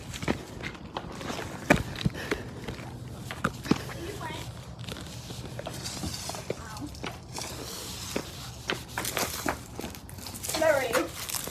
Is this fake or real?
real